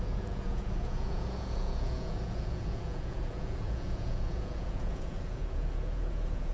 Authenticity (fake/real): fake